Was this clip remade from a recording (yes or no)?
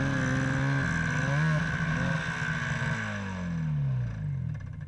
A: no